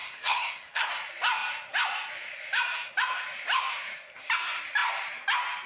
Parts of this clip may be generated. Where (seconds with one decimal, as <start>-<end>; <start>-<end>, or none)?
0.0-0.9